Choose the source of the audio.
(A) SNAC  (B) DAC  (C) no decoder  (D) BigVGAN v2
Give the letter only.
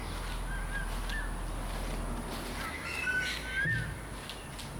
C